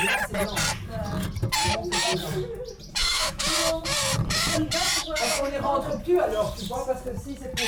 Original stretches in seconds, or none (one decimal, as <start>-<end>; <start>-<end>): 0.0-3.0; 3.5-5.0; 5.5-7.7